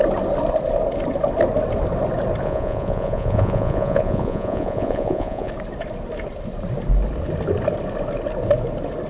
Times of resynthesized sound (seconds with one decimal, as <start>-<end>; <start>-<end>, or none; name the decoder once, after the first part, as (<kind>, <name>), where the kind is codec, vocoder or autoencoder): 2.4-5.5 (vocoder, Vocos)